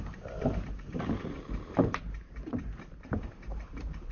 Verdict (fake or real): fake